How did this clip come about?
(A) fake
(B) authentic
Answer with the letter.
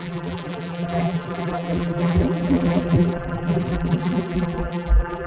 A